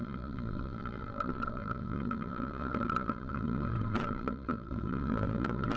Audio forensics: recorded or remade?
remade